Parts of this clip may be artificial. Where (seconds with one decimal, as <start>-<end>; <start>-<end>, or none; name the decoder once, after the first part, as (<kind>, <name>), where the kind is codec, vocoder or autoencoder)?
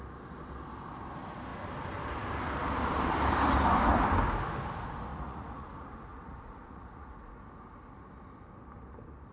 5.1-7.4 (vocoder, Vocos)